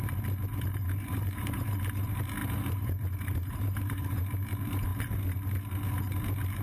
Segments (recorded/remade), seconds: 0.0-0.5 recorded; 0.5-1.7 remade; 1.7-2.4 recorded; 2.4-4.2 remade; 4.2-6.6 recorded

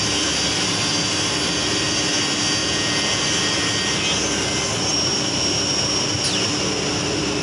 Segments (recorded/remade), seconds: 0.0-2.6 recorded; 2.6-3.2 remade; 3.2-7.4 recorded

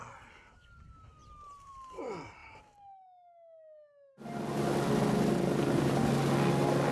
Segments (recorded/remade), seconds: 0.0-1.2 recorded; 1.2-1.7 remade; 1.7-6.9 recorded